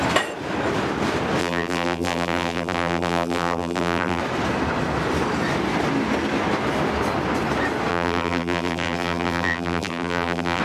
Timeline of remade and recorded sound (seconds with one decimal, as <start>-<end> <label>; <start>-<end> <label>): 0.0-1.4 recorded; 1.4-4.2 remade; 4.2-7.9 recorded; 7.9-10.6 remade